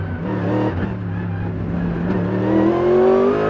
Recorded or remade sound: recorded